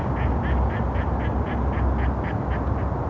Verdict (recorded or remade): recorded